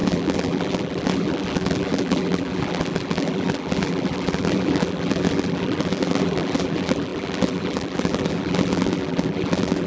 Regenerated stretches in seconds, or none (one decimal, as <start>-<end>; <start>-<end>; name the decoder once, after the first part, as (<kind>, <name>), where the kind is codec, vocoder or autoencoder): 0.0-9.9 (vocoder, BigVGAN v2)